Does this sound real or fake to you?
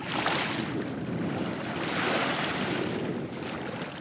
real